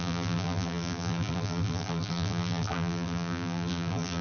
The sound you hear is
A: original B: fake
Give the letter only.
B